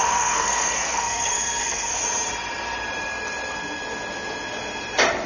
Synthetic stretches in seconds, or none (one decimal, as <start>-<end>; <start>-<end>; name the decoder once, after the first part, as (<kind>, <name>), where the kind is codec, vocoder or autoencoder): 0.0-2.0 (codec, SNAC)